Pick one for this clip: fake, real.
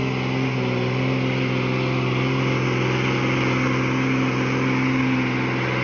real